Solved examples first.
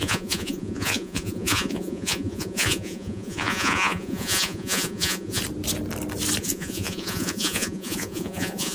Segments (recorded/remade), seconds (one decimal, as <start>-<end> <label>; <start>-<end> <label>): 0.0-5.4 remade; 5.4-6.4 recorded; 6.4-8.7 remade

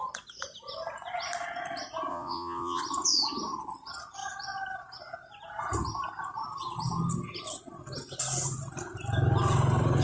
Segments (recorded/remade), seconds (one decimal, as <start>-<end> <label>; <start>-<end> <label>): 0.0-2.1 recorded; 2.1-2.8 remade; 2.8-10.0 recorded

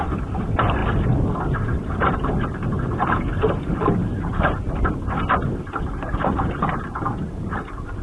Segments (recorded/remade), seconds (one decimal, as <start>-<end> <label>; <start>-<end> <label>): 0.0-8.0 recorded

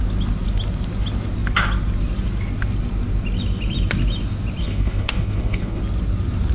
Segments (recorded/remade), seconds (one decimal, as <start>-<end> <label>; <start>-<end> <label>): 0.0-4.6 recorded; 4.6-5.8 remade; 5.8-6.5 recorded

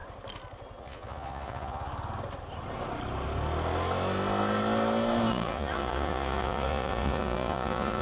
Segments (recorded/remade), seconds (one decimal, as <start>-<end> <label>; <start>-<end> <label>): 0.0-0.8 recorded; 0.8-1.9 remade; 1.9-5.3 recorded; 5.3-8.0 remade

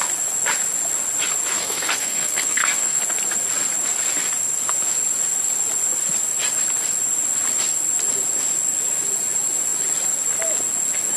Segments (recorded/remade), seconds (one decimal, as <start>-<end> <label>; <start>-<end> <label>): 0.0-1.6 recorded; 1.6-3.0 remade; 3.0-11.2 recorded